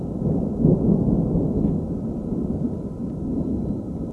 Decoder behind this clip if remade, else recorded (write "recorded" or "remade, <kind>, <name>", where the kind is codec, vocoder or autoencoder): recorded